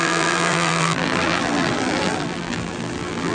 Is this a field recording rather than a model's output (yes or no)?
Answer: no